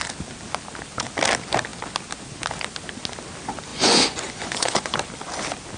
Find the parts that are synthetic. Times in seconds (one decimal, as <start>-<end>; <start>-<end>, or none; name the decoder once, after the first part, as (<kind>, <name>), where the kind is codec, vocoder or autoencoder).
3.7-5.0 (vocoder, Vocos)